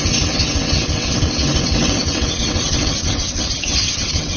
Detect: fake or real fake